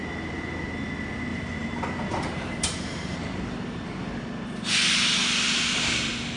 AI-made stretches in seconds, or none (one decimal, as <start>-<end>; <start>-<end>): 1.3-3.4

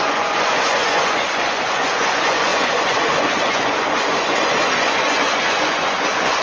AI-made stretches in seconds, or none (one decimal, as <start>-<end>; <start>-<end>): 0.0-6.4

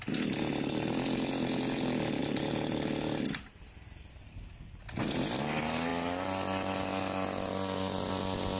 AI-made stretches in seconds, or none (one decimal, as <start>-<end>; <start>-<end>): none

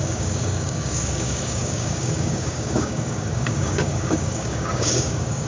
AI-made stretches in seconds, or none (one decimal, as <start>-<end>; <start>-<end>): 0.0-5.5